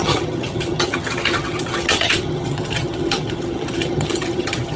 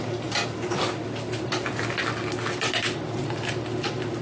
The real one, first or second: second